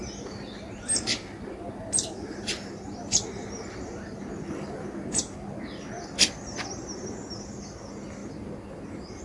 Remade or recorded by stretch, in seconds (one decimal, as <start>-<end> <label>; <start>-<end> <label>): 0.0-9.2 recorded